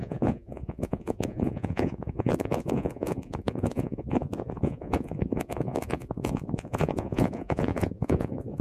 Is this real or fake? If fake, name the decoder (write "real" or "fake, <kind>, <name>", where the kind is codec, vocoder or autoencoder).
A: fake, vocoder, Vocos